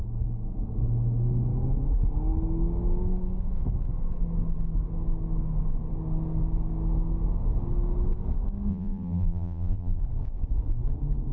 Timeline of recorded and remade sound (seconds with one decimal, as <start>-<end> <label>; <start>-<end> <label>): 0.0-8.7 recorded; 8.7-10.0 remade; 10.0-11.3 recorded